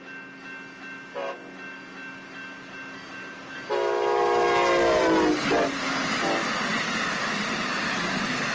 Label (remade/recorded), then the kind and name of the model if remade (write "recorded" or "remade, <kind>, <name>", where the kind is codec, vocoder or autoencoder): recorded